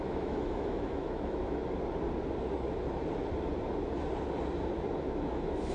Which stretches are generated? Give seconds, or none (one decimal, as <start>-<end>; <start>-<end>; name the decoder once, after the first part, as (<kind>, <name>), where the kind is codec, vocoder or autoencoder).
0.0-1.6 (autoencoder, DAC-VAE); 5.0-5.7